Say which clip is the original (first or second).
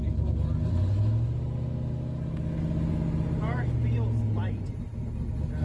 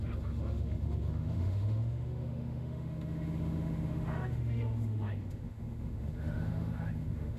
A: first